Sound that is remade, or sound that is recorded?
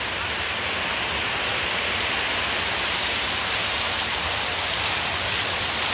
remade